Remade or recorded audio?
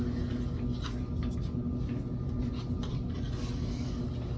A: recorded